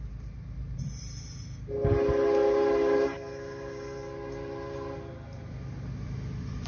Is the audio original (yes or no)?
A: yes